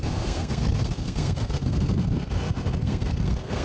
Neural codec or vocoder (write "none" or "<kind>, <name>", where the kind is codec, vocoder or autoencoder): codec, SNAC